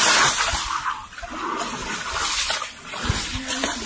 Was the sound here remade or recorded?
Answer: recorded